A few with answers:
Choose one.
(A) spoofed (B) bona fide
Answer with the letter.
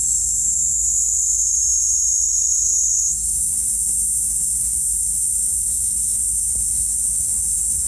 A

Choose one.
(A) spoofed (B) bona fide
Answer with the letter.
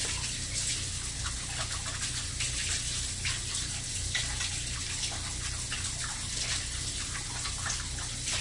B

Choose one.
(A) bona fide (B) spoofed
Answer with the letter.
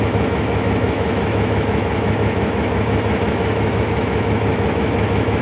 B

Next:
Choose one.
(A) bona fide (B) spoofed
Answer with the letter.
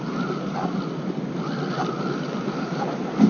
A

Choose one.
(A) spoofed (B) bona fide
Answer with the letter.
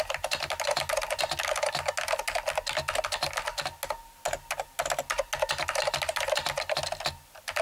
B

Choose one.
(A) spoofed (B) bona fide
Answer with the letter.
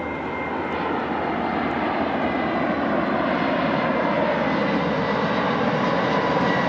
B